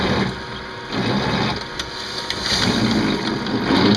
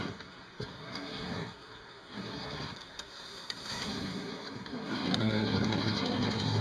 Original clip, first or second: first